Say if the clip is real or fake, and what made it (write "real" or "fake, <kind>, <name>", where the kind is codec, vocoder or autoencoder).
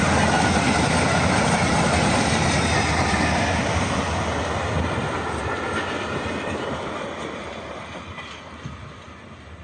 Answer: real